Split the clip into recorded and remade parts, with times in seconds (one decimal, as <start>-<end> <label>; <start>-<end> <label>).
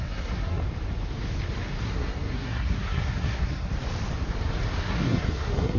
0.0-0.6 remade; 0.6-1.8 recorded; 1.8-3.7 remade; 3.7-4.8 recorded; 4.8-5.8 remade